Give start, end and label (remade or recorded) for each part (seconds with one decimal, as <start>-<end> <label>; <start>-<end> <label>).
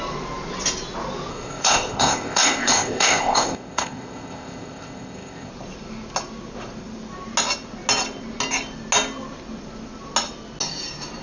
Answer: 0.0-1.3 recorded; 1.3-5.5 remade; 5.5-11.2 recorded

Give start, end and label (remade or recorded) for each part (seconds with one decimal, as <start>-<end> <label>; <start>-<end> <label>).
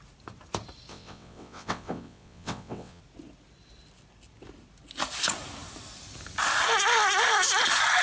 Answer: 0.0-0.9 recorded; 0.9-3.0 remade; 3.0-8.0 recorded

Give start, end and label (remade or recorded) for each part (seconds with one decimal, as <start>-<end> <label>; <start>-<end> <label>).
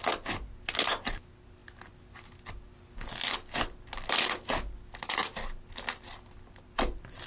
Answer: 0.0-7.3 recorded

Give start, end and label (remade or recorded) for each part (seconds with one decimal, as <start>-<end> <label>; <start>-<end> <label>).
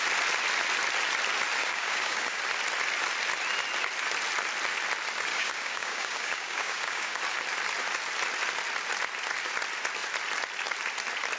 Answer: 0.0-1.6 recorded; 1.6-2.4 remade; 2.4-5.3 recorded; 5.3-7.2 remade; 7.2-11.4 recorded